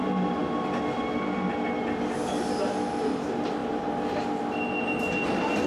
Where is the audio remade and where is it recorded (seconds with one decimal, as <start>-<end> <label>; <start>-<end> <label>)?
0.0-5.7 recorded